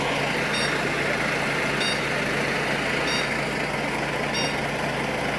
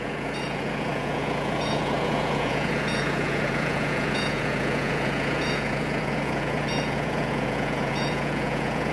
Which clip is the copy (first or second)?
second